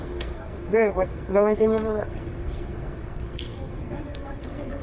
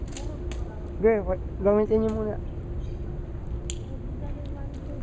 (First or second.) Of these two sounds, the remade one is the first